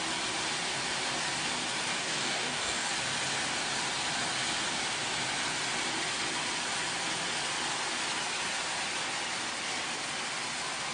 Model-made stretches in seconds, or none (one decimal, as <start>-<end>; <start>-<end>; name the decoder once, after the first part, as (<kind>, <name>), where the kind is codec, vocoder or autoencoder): 2.0-2.9 (codec, DAC)